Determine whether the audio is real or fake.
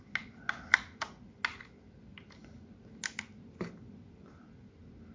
real